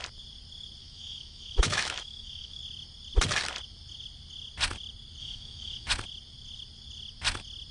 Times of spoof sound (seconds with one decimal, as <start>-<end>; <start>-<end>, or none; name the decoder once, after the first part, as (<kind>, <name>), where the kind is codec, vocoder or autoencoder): 0.8-2.6 (autoencoder, DAC-VAE); 5.2-5.9